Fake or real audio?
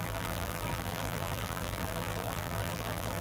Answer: fake